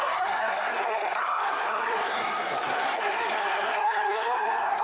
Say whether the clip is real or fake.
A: fake